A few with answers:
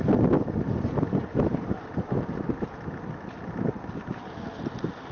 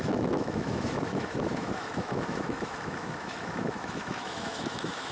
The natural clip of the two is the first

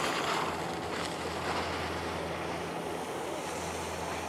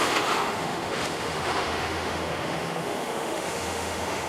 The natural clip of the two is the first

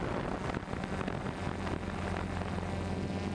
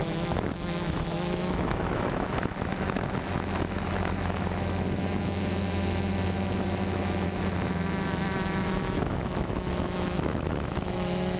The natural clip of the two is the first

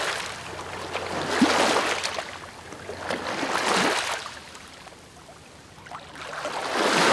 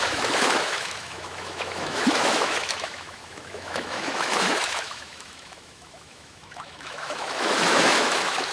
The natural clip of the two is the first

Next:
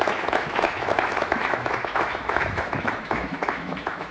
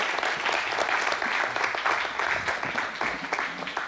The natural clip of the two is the second